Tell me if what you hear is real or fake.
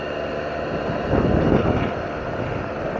real